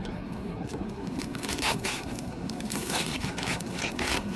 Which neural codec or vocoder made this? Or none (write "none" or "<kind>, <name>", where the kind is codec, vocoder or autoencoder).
codec, SNAC